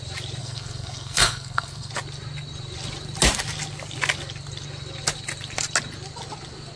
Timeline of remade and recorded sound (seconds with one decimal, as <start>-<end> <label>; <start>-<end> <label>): 0.0-0.4 recorded; 0.4-1.9 remade; 1.9-6.8 recorded

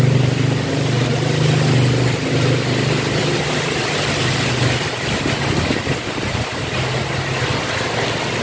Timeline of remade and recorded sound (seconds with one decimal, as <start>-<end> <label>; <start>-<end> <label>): 0.0-8.4 recorded

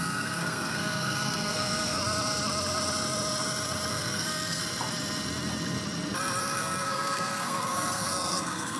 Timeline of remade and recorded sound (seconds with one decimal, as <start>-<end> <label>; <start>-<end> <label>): 0.0-2.0 remade; 2.0-3.9 recorded; 3.9-4.6 remade; 4.6-6.4 recorded; 6.4-8.8 remade

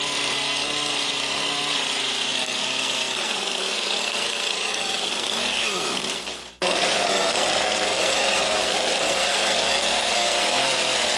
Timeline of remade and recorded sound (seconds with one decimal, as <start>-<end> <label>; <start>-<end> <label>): 0.0-11.2 remade

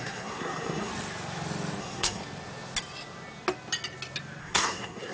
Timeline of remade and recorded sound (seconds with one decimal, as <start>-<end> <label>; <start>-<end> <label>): 0.0-0.9 remade; 0.9-1.8 recorded; 1.8-2.2 remade; 2.2-4.4 recorded; 4.4-5.1 remade